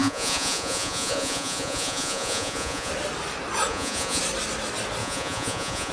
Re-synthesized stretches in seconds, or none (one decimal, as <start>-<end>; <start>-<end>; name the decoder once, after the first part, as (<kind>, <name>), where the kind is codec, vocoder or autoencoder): 0.0-2.9 (vocoder, Vocos); 3.7-4.2; 5.0-5.9